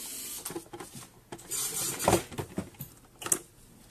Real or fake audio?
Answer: real